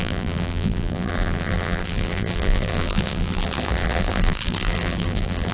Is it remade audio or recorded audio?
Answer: remade